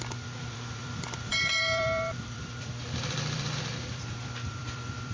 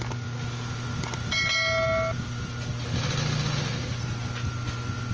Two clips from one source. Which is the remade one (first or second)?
first